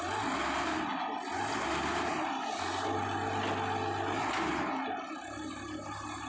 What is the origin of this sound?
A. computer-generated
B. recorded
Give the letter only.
B